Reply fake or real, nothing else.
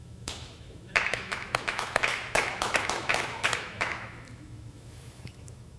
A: fake